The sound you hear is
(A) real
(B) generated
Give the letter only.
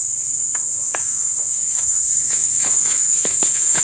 B